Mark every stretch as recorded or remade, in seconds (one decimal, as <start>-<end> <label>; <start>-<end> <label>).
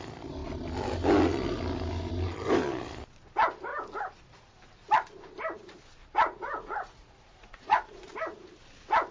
0.0-6.0 recorded; 6.0-8.1 remade; 8.1-9.1 recorded